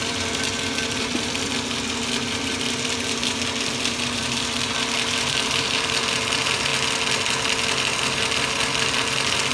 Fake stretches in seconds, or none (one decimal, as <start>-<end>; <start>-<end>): 0.0-6.7; 7.8-9.5